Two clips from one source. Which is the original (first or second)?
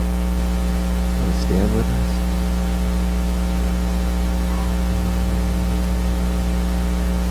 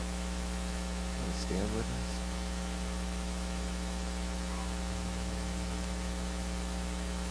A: first